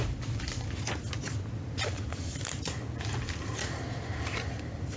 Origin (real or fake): real